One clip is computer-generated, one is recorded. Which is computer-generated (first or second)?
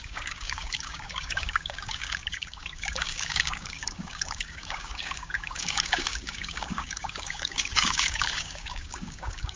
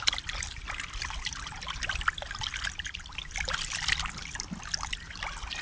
first